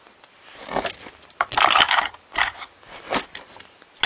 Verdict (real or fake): real